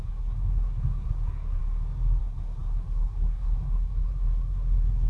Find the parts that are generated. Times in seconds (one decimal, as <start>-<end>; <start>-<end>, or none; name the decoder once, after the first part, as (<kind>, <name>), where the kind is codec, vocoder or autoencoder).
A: 0.0-1.6 (codec, SNAC); 2.2-5.1